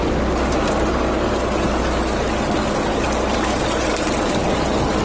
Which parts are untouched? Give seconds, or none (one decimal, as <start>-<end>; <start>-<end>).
0.0-5.0